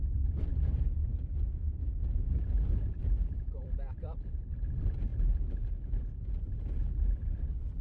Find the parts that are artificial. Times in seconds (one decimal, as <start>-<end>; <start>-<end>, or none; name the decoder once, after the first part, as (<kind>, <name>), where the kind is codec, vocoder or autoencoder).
0.0-0.5 (vocoder, BigVGAN v2); 2.4-5.1; 6.4-7.8